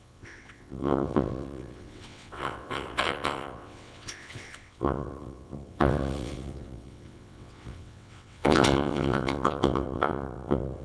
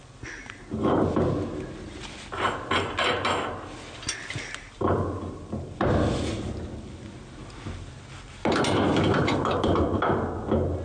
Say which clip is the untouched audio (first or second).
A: second